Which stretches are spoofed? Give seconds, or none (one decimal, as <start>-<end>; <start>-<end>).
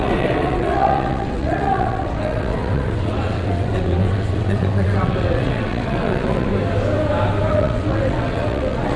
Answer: 0.0-6.5; 7.5-9.0